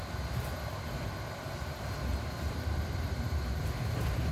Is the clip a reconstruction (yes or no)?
yes